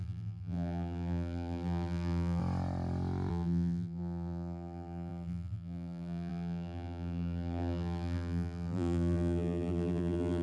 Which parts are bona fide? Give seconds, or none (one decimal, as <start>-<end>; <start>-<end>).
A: 2.4-3.3